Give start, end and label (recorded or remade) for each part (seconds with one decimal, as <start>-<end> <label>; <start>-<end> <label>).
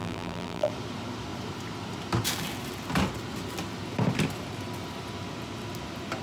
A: 0.0-0.7 remade; 0.7-6.2 recorded